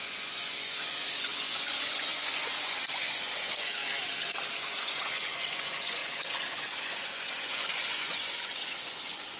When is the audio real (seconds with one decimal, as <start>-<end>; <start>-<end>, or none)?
3.8-4.6

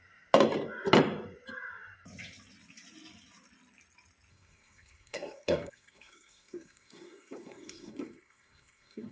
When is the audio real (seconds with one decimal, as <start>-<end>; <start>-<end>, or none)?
0.0-4.3

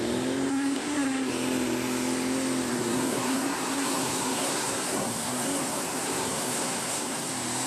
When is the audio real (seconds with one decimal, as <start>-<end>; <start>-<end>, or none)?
0.0-0.5; 1.3-2.7; 7.3-7.7

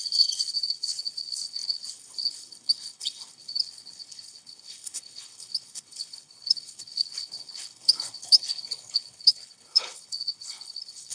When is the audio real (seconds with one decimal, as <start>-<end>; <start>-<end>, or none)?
none

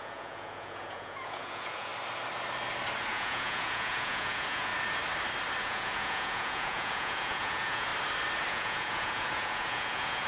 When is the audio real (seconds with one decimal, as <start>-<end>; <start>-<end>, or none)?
1.9-3.1; 4.7-5.6; 7.9-8.5

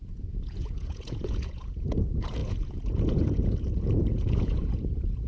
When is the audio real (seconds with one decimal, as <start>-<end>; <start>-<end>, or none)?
none